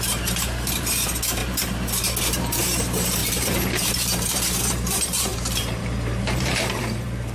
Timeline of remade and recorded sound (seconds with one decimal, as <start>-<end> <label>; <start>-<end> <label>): 0.0-1.4 remade; 1.4-2.2 recorded; 2.2-7.3 remade